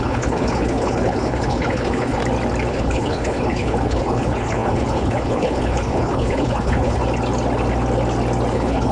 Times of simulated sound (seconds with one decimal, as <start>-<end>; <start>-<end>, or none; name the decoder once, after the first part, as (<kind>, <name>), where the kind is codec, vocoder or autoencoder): 0.0-2.2 (codec, HILCodec); 2.7-7.0; 8.5-8.9